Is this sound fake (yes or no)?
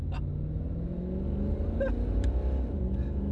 no